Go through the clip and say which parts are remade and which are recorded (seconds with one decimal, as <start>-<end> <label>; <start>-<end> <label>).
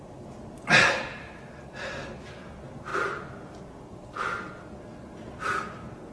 0.0-6.1 recorded